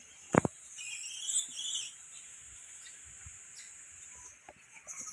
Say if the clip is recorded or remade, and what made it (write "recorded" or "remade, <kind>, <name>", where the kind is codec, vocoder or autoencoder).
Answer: remade, vocoder, BigVGAN v2